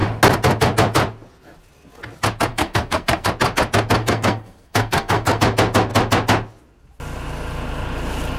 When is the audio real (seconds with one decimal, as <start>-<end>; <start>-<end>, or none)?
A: 0.0-2.5; 3.3-4.0; 5.4-8.4